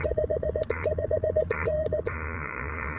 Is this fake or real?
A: fake